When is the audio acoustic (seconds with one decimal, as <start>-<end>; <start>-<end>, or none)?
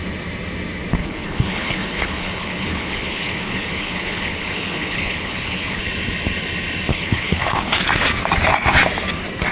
0.0-1.0; 5.8-6.9; 7.8-9.5